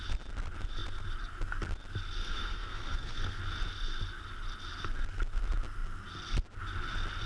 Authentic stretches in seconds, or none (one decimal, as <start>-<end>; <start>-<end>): 0.0-2.2; 3.4-7.3